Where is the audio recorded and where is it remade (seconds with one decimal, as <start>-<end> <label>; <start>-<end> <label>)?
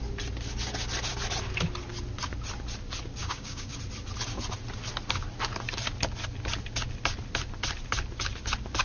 0.0-3.2 recorded; 3.2-3.8 remade; 3.8-8.8 recorded